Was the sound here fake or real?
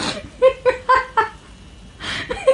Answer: real